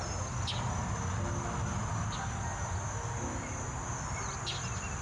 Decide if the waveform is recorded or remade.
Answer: recorded